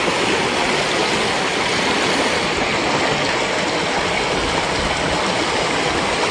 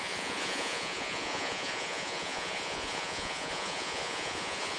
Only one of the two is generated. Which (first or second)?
second